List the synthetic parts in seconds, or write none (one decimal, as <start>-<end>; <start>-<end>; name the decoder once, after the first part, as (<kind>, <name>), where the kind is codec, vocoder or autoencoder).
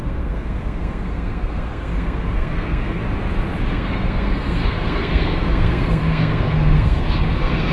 0.0-3.0 (codec, SNAC); 3.7-7.7